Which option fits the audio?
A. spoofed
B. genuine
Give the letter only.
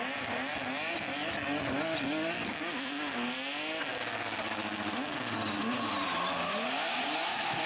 B